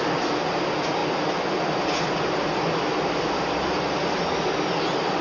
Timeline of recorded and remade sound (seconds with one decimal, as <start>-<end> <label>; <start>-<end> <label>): 0.0-5.2 recorded